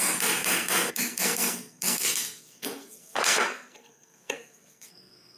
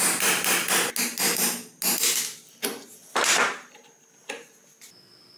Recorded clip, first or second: second